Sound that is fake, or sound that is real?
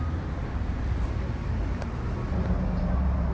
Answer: real